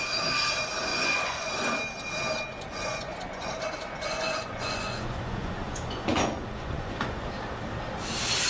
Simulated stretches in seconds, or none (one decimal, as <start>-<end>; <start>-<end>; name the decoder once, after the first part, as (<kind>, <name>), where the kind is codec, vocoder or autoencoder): 0.9-1.5 (vocoder, Vocos); 2.5-7.3

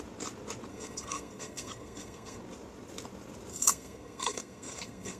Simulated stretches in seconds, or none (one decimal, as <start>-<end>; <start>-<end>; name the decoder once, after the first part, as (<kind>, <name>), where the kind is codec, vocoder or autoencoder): 0.7-2.4 (codec, SNAC); 3.5-5.2

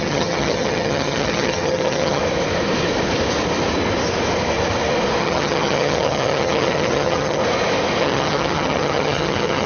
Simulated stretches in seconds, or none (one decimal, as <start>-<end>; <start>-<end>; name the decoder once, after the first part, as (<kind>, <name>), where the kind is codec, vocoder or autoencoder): 0.0-2.2 (vocoder, HiFi-GAN); 5.2-7.4; 8.0-9.7